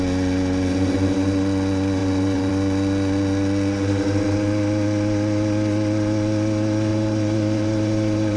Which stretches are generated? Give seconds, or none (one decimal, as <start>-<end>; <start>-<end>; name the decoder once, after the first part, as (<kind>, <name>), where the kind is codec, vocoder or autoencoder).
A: 2.0-2.5 (vocoder, BigVGAN v2); 6.9-8.4